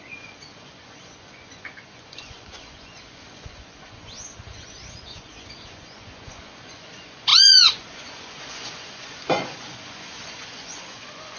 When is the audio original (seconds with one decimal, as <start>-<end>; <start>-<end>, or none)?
none